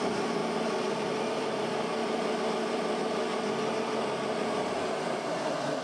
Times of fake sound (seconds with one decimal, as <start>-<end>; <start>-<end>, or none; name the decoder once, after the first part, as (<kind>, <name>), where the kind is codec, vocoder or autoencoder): 0.0-0.4 (vocoder, BigVGAN v2); 1.3-3.3; 4.6-5.8